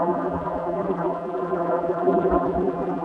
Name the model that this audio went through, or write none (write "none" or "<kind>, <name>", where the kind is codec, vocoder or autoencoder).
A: vocoder, BigVGAN v2